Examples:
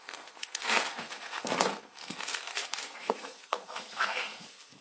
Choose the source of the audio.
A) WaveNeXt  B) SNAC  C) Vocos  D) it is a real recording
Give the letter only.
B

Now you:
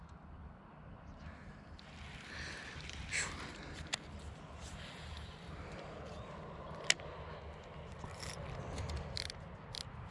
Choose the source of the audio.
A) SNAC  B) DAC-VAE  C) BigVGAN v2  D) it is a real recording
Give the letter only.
D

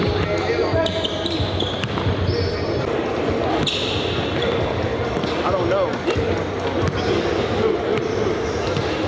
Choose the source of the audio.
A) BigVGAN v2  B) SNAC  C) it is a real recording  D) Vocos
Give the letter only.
C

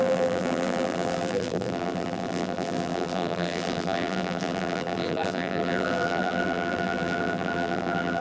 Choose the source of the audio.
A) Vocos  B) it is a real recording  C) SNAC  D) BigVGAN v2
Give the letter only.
D